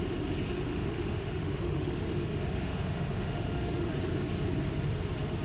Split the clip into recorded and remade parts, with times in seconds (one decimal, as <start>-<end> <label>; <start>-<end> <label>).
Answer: 0.0-0.7 recorded; 0.7-3.9 remade; 3.9-5.4 recorded